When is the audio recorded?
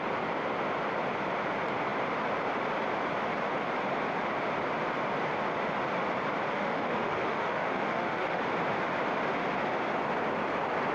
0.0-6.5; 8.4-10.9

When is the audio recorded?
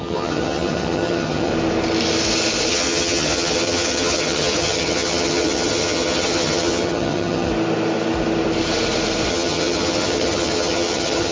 1.5-2.7; 7.5-9.3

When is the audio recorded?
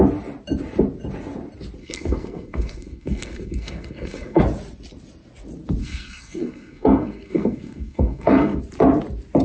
0.0-1.8; 4.4-5.8; 8.6-9.4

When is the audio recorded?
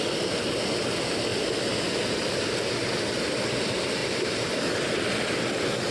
0.0-5.9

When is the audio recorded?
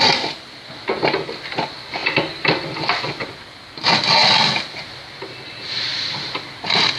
0.0-4.2; 6.6-7.0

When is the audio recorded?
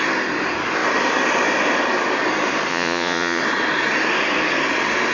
0.0-2.7; 3.4-5.1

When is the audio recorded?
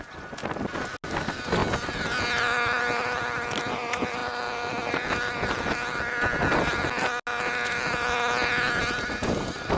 0.0-9.8